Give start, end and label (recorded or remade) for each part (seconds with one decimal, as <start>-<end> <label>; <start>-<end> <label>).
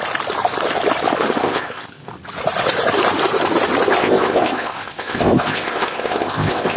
0.0-1.4 recorded; 1.4-2.1 remade; 2.1-4.0 recorded; 4.0-6.8 remade